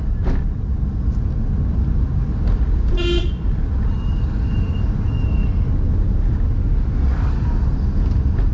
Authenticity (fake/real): real